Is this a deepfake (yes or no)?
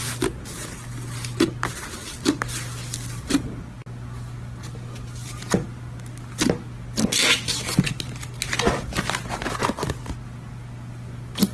no